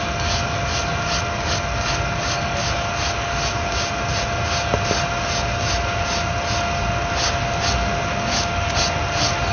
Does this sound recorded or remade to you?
recorded